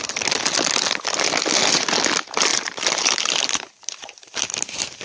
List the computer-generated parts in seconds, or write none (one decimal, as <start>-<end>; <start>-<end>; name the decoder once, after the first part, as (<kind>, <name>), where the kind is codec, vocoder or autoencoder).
2.5-4.4 (vocoder, BigVGAN v2)